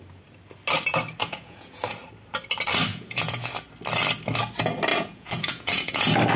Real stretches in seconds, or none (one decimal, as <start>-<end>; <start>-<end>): 0.0-1.2; 1.8-2.9; 3.5-4.9; 6.0-6.4